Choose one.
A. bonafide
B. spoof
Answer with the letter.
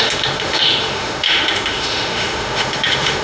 B